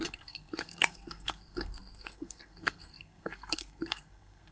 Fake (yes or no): yes